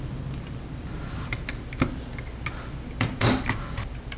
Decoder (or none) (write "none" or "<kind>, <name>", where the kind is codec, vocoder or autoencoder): none